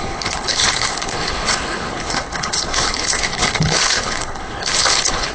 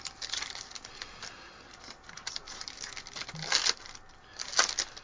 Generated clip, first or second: first